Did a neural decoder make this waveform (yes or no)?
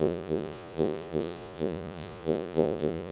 yes